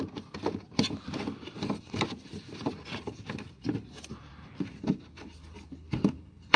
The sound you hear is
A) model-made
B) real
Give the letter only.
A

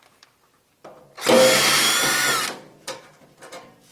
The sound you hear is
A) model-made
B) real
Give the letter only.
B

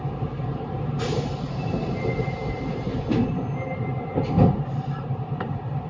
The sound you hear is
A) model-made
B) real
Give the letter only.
A